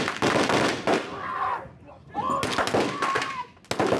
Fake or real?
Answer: real